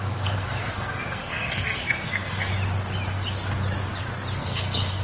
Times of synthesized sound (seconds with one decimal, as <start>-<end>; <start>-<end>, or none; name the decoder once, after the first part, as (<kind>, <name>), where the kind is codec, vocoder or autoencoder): 0.0-2.5 (codec, SNAC); 4.4-5.0